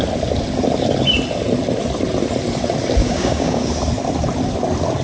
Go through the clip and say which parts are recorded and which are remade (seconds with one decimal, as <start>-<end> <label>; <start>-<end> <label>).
0.0-3.0 recorded; 3.0-3.7 remade; 3.7-5.0 recorded